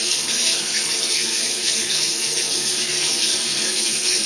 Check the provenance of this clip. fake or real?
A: fake